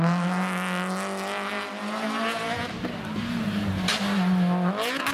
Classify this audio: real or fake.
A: real